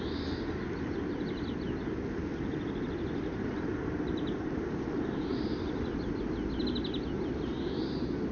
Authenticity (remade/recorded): recorded